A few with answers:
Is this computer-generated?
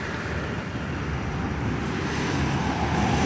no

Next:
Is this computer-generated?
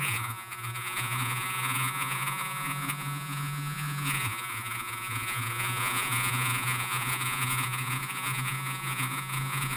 yes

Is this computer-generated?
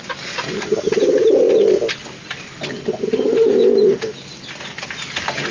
no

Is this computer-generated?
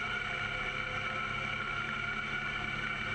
no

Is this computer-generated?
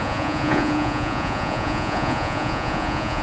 yes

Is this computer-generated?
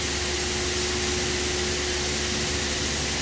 no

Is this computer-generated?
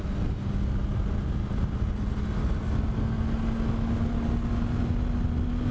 no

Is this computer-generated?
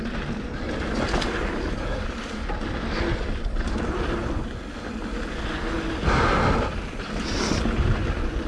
no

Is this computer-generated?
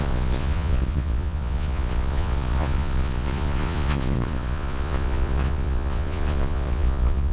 yes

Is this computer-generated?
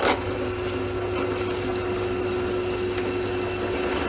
no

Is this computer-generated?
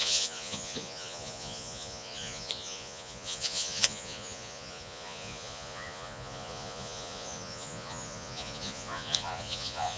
yes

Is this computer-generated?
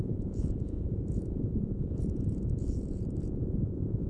yes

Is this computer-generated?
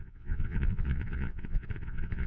yes